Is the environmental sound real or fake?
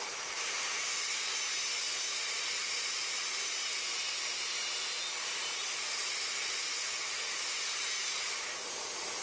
real